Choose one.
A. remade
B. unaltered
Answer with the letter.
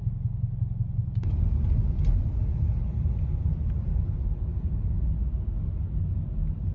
B